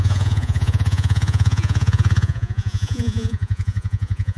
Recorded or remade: remade